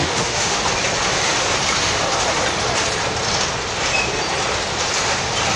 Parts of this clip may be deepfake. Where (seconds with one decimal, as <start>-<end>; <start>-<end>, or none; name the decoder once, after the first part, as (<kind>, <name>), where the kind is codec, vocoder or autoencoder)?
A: 0.0-0.6 (autoencoder, DAC-VAE)